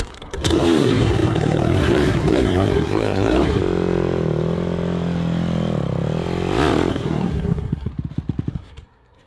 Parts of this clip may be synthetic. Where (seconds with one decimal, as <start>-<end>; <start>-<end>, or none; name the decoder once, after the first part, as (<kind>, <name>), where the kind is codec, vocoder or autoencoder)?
0.0-3.6 (codec, SNAC); 6.9-7.9; 8.5-9.3